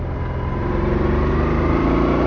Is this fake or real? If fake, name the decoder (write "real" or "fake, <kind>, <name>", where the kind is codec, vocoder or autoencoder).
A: real